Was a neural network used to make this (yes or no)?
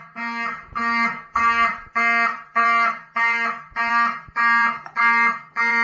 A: yes